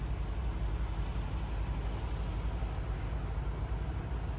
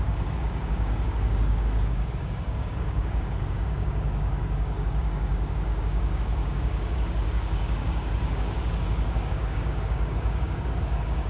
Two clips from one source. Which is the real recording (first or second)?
first